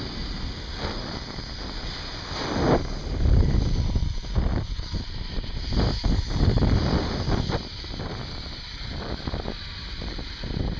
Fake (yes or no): no